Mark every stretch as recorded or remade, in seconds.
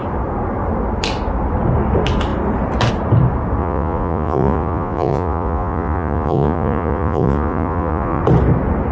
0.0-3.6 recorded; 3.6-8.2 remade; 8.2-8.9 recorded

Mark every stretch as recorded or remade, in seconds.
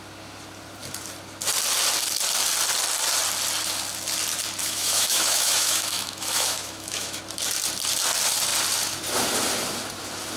0.0-4.6 recorded; 4.6-7.2 remade; 7.2-10.4 recorded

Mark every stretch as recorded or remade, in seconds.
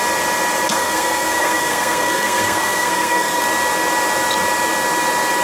0.0-0.7 recorded; 0.7-3.4 remade; 3.4-5.4 recorded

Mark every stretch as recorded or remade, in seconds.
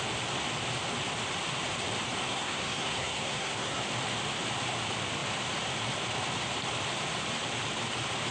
0.0-2.3 recorded; 2.3-3.8 remade; 3.8-8.3 recorded